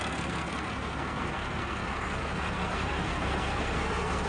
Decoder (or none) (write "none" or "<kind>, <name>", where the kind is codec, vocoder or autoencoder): codec, SNAC